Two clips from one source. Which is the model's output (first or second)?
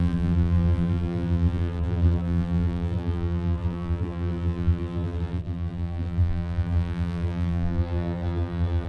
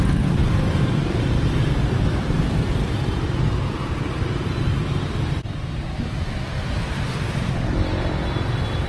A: first